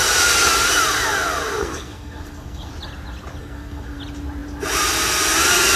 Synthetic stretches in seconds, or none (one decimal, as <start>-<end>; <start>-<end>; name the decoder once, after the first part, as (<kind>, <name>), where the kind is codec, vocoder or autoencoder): 1.6-2.7 (codec, SNAC); 3.4-4.0